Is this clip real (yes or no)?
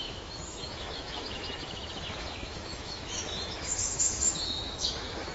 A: no